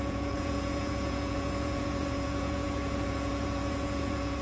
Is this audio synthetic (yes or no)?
yes